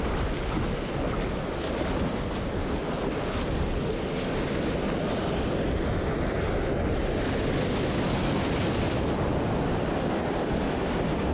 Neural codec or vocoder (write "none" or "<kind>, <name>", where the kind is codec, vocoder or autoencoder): none